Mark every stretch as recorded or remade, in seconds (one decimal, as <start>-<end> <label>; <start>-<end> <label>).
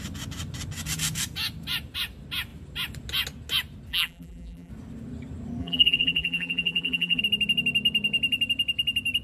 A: 0.0-3.9 recorded; 3.9-4.7 remade; 4.7-5.6 recorded; 5.6-7.2 remade; 7.2-9.2 recorded